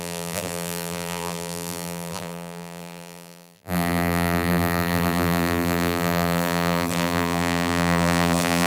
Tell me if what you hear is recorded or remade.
remade